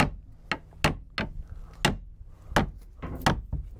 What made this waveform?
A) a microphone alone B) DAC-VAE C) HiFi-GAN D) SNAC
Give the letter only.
A